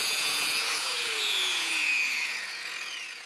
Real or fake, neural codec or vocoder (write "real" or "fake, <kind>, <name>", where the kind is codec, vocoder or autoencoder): fake, vocoder, Vocos